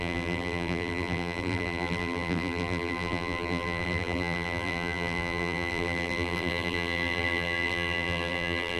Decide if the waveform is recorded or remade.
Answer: remade